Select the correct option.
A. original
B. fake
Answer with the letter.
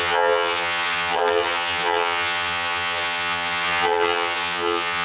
B